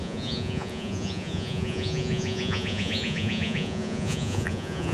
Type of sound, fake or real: fake